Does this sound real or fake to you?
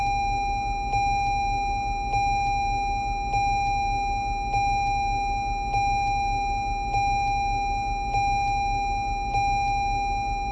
real